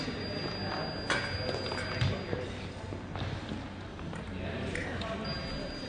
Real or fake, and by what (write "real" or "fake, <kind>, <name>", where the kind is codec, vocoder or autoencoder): real